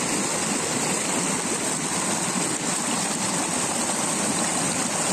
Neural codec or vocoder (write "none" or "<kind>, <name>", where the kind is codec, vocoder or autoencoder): none